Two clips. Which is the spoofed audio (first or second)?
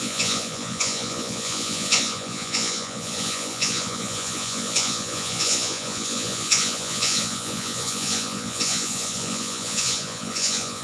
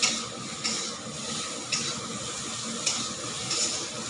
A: first